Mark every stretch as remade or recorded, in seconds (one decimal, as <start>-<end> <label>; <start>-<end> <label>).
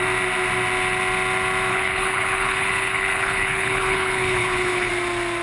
0.0-1.7 recorded; 1.7-4.9 remade; 4.9-5.4 recorded